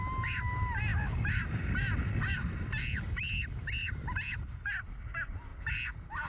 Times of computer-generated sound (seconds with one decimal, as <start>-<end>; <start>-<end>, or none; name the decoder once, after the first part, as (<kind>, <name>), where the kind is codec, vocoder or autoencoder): none